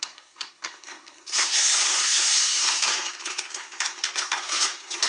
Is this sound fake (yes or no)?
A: yes